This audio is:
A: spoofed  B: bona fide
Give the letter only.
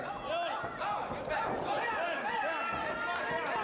B